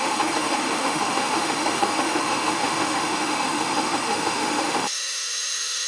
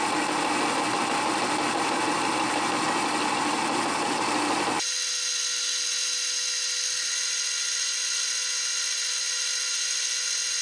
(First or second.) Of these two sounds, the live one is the second